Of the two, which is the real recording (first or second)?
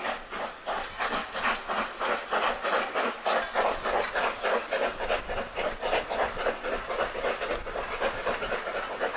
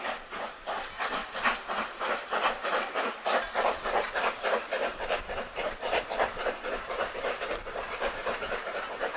first